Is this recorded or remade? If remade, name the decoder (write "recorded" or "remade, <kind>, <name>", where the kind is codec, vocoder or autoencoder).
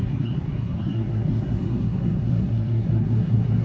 remade, codec, SNAC